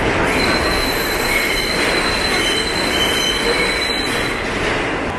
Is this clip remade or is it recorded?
recorded